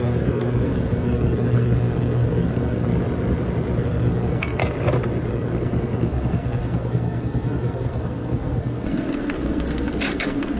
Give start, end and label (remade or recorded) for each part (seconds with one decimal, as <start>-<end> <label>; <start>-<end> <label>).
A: 0.0-2.9 remade; 2.9-3.8 recorded; 3.8-4.6 remade; 4.6-5.3 recorded; 5.3-10.6 remade